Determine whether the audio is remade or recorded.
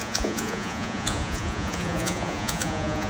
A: remade